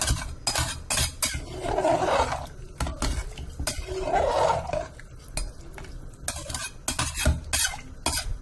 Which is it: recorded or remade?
recorded